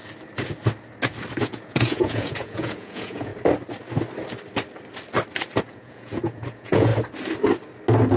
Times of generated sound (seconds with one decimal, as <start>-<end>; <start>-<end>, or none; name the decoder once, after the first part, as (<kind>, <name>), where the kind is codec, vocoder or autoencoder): 1.4-3.3 (vocoder, Vocos); 5.6-6.9